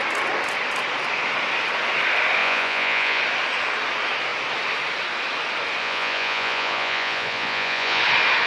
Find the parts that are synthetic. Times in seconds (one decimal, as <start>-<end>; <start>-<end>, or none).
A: 2.4-3.2; 5.8-8.0